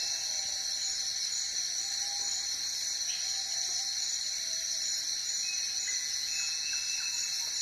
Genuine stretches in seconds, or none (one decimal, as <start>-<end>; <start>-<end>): 0.0-6.0; 6.7-7.6